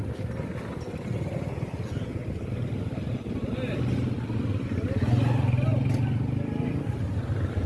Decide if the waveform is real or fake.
real